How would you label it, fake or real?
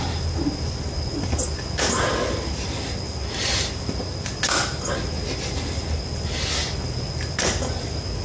real